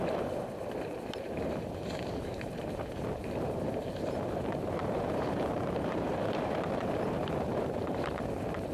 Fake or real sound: fake